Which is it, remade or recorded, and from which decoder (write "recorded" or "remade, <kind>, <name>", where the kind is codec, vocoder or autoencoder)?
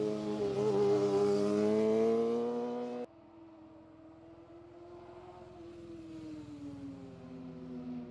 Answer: recorded